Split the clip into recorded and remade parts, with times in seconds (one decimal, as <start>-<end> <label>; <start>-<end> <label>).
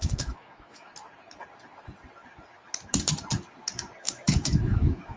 0.0-0.9 remade; 0.9-4.0 recorded; 4.0-5.2 remade